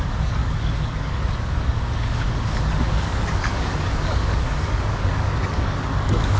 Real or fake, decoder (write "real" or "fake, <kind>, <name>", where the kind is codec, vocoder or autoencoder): fake, codec, DAC